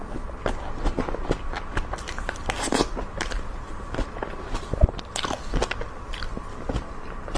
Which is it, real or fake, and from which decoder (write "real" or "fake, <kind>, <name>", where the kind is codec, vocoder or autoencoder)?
real